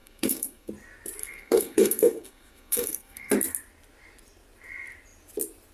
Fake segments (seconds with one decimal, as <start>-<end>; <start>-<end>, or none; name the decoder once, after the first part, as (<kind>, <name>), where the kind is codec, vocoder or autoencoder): 0.0-0.7 (codec, SNAC); 1.2-3.3